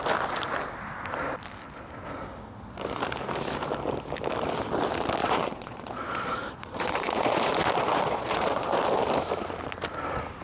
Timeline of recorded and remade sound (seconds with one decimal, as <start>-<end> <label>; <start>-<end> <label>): 0.0-5.2 recorded; 5.2-8.7 remade; 8.7-10.4 recorded